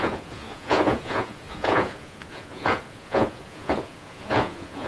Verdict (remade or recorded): remade